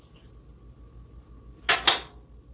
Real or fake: real